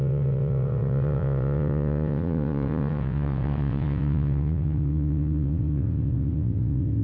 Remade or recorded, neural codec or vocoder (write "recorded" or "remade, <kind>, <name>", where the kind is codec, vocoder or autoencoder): remade, vocoder, WaveNeXt